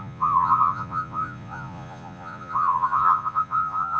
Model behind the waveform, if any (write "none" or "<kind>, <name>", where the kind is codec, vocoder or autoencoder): vocoder, Vocos